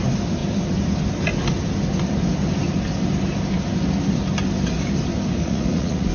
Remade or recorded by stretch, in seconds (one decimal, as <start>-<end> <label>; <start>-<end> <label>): 0.0-5.4 recorded; 5.4-6.1 remade